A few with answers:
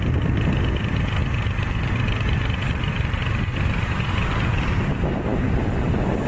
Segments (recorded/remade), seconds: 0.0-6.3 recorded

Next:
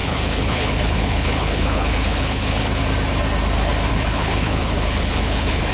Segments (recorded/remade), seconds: 0.0-2.8 remade; 2.8-3.9 recorded; 3.9-5.7 remade